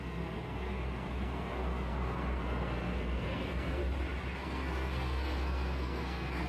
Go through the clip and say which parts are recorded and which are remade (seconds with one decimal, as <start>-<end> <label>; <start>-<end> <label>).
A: 0.0-3.8 remade; 3.8-4.4 recorded; 4.4-6.5 remade